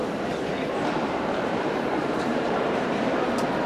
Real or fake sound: fake